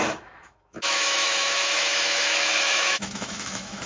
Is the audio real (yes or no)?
no